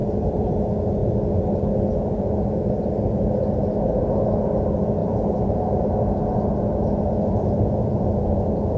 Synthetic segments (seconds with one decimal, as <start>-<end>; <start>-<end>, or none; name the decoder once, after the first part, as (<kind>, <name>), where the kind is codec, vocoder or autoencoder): 0.0-0.6 (vocoder, BigVGAN v2); 5.0-5.9